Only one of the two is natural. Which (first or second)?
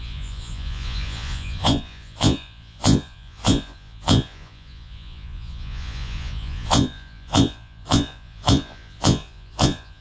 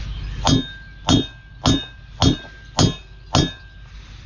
second